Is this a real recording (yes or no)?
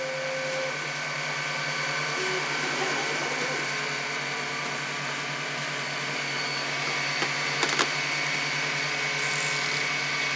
yes